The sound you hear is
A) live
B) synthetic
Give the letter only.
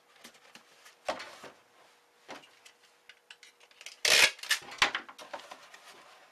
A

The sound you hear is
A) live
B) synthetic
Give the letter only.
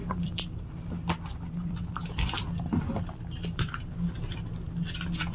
B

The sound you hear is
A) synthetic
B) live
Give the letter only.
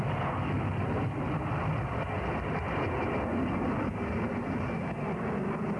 B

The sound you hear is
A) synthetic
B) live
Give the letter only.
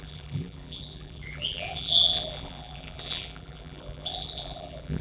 A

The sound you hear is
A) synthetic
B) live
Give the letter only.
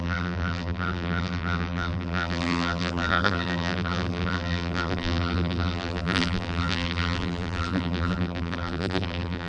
A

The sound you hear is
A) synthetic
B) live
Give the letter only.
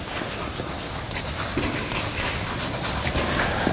B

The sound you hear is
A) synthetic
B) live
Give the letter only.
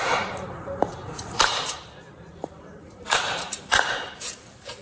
A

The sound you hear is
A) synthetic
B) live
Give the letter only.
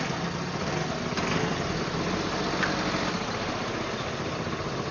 B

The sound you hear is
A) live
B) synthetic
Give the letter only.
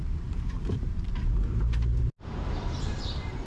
B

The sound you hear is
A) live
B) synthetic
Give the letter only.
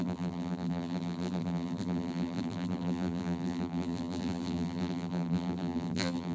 B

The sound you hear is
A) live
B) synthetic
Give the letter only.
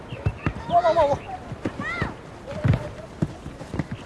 B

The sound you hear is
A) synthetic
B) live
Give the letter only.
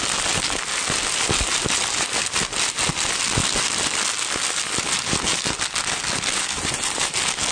B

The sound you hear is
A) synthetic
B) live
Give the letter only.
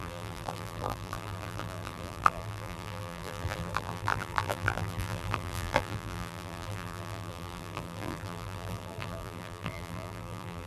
A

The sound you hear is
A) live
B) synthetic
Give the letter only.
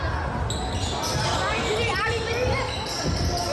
A